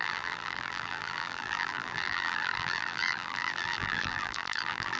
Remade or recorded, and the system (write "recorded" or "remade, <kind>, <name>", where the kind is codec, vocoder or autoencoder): remade, vocoder, BigVGAN v2